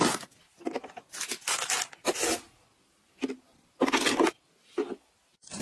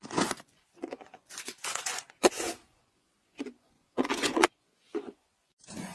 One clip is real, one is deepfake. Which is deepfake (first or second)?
second